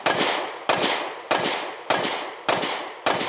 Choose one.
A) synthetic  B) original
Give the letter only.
B